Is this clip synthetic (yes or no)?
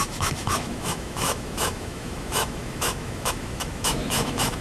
yes